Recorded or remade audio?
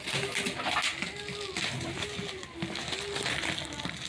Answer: recorded